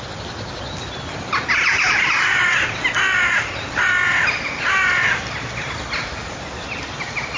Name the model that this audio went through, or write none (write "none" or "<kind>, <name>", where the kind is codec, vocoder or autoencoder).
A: none